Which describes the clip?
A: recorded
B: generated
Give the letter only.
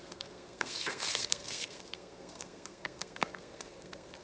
B